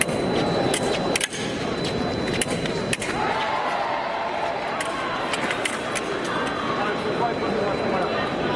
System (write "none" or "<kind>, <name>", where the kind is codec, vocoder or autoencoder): none